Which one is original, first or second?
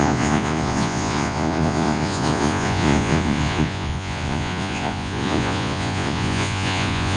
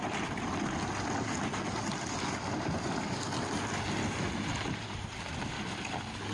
second